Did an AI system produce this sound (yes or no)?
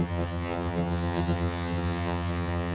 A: yes